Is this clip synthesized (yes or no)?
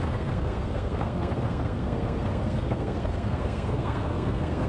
yes